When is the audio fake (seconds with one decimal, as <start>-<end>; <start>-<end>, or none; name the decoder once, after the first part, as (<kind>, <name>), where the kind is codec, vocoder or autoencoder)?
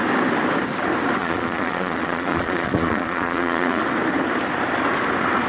1.2-3.8 (vocoder, Vocos)